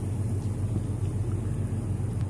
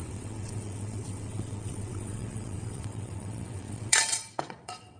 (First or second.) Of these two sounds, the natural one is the first